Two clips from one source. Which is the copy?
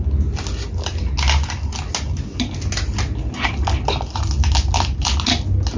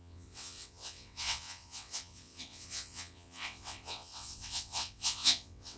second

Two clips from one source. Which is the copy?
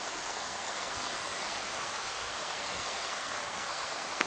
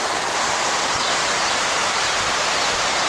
first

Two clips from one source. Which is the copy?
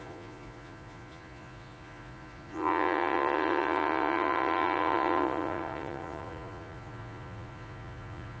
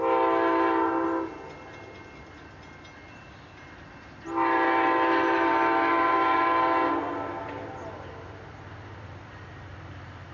first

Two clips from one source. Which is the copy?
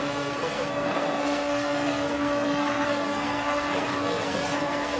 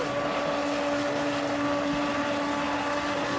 first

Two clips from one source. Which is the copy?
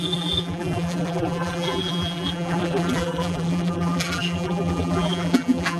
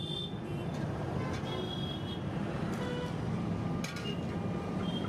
first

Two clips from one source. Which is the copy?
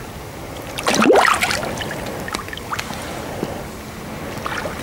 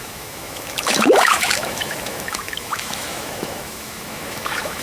second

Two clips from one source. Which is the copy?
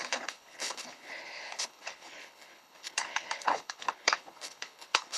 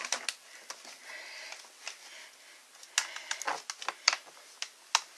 first